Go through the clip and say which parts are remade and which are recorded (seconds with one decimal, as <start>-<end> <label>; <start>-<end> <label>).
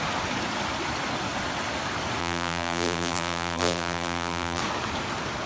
0.0-2.2 recorded; 2.2-4.6 remade; 4.6-5.5 recorded